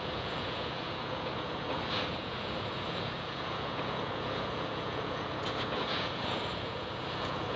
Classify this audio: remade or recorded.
remade